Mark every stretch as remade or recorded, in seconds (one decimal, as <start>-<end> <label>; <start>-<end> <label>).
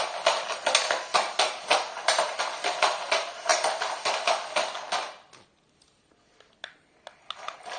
0.0-7.8 recorded